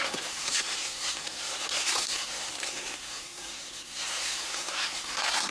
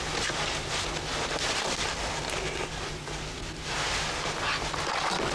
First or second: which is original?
second